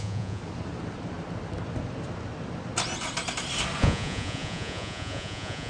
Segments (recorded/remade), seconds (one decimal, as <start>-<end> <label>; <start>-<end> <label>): 0.0-0.4 remade; 0.4-3.8 recorded; 3.8-5.7 remade